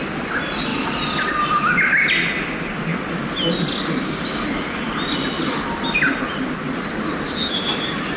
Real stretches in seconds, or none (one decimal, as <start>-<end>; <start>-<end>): 0.0-0.7; 1.3-8.2